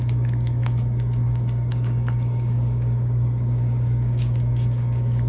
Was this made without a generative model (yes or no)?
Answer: no